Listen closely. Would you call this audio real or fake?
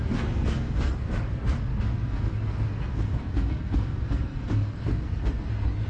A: fake